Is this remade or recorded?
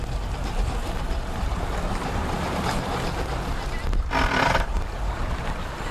recorded